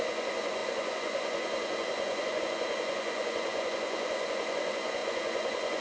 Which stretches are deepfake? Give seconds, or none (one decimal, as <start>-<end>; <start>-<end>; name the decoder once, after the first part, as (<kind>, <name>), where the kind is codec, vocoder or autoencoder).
0.0-5.8 (vocoder, Vocos)